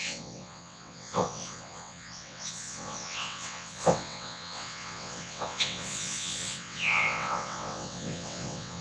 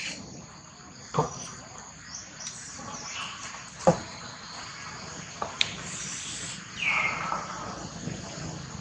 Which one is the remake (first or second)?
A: first